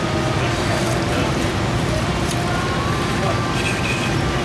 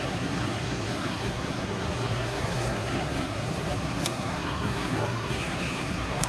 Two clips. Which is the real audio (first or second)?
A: first